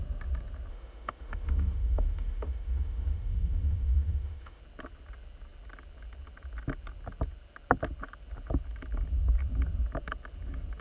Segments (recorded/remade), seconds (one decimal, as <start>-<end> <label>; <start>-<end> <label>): 0.0-0.7 recorded; 0.7-4.6 remade; 4.6-10.8 recorded